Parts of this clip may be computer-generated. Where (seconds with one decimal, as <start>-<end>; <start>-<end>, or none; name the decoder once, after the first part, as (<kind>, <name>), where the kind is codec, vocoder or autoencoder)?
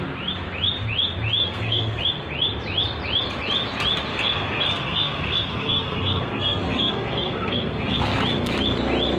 1.4-2.0 (codec, SNAC); 4.1-8.0